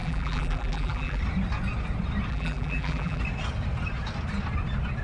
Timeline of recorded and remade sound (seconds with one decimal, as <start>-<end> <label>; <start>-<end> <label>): 0.0-1.2 remade; 1.2-2.3 recorded; 2.3-3.2 remade; 3.2-5.0 recorded